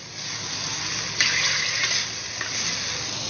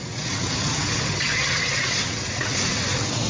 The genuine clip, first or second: first